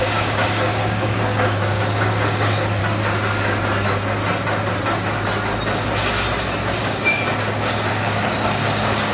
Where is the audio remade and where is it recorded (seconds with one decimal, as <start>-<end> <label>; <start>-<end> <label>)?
0.0-2.8 remade; 2.8-6.8 recorded; 6.8-7.2 remade; 7.2-7.9 recorded; 7.9-9.1 remade